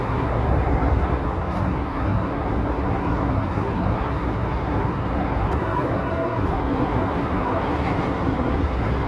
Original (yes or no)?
no